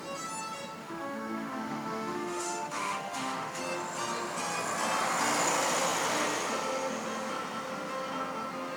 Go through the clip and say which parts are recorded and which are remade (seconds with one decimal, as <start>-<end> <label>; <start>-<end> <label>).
0.0-0.8 recorded; 0.8-3.6 remade; 3.6-8.8 recorded